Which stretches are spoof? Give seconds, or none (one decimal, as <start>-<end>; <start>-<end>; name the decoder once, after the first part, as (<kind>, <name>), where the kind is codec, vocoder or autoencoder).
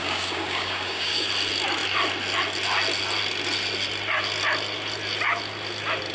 0.0-1.3 (codec, DAC)